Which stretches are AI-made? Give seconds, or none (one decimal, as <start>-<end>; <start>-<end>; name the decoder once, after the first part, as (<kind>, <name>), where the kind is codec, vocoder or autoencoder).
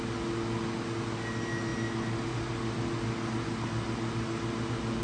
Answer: none